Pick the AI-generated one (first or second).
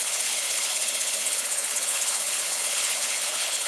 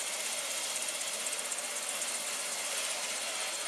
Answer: first